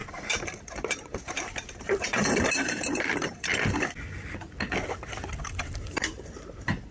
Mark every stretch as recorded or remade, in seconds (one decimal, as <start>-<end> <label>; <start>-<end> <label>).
0.0-3.5 remade; 3.5-5.4 recorded; 5.4-6.9 remade